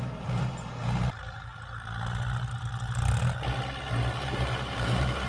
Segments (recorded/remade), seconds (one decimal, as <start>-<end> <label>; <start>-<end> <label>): 0.0-1.5 remade; 1.5-4.1 recorded; 4.1-5.3 remade